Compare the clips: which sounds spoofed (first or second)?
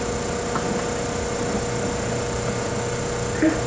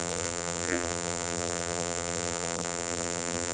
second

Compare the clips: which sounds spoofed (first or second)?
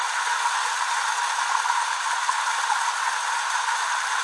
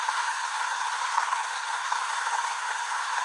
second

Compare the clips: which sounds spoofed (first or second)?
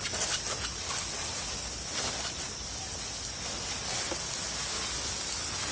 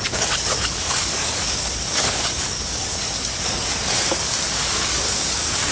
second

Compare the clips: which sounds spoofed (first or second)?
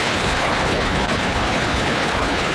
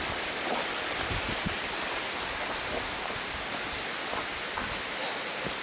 first